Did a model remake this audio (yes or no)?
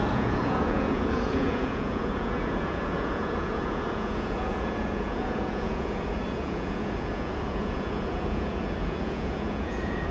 yes